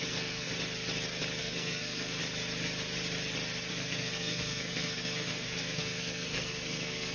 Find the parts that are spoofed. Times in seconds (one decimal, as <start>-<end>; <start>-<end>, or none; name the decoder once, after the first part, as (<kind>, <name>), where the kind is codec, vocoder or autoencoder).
0.0-0.5 (codec, SNAC); 1.4-2.2; 3.7-7.1